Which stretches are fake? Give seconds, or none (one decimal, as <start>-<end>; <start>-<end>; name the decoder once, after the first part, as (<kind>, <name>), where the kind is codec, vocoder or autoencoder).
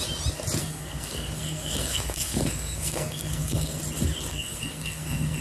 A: 0.6-3.8 (codec, SNAC); 4.3-5.4